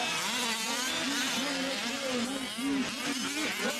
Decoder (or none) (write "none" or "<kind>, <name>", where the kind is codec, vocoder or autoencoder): none